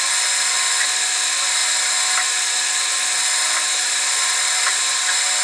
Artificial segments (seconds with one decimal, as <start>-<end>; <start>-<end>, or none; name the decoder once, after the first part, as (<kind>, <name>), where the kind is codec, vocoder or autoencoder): none